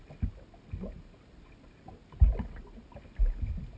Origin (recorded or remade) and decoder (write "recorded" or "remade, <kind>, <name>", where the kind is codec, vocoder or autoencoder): recorded